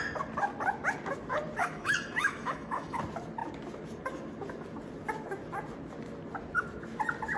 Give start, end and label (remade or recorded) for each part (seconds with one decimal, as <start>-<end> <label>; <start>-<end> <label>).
0.0-1.6 recorded; 1.6-3.0 remade; 3.0-7.4 recorded

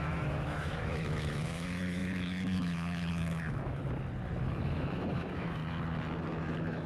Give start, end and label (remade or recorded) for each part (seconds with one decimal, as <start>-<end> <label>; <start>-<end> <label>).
0.0-3.8 remade; 3.8-4.5 recorded; 4.5-5.6 remade; 5.6-6.3 recorded; 6.3-6.9 remade

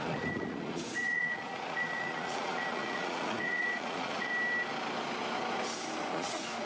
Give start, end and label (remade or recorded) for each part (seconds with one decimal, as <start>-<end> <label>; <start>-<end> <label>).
0.0-4.3 remade; 4.3-6.1 recorded; 6.1-6.7 remade

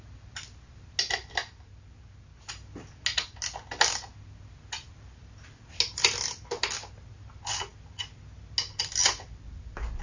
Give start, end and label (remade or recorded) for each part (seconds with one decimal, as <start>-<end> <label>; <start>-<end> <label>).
0.0-10.0 recorded

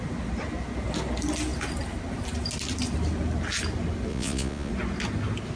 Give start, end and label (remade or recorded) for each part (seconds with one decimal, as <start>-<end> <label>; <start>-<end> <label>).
0.0-4.1 recorded; 4.1-4.7 remade; 4.7-5.6 recorded

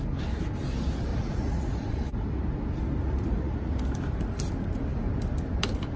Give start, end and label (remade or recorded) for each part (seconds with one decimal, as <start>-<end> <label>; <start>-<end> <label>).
0.0-1.1 recorded; 1.1-2.4 remade; 2.4-3.0 recorded; 3.0-3.8 remade; 3.8-6.0 recorded